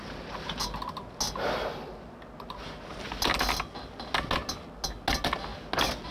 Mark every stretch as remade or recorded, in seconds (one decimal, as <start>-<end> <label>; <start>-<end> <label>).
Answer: 0.0-6.1 recorded